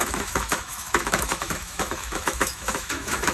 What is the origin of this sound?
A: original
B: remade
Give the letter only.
B